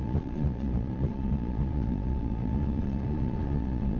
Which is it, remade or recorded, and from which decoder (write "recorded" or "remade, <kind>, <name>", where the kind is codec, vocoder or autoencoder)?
remade, vocoder, Vocos